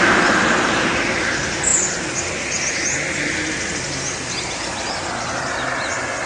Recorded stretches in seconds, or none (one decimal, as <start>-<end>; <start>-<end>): 0.0-6.3